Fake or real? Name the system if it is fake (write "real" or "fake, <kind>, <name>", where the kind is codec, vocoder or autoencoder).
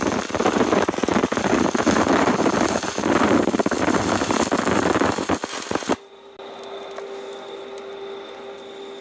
real